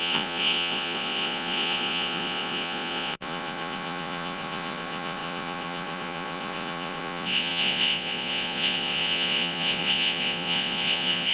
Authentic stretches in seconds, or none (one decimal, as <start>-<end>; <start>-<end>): none